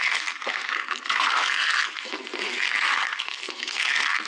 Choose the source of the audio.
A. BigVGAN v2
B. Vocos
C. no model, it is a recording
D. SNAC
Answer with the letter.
D